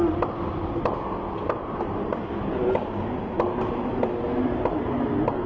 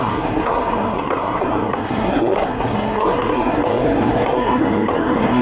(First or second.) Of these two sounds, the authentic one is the first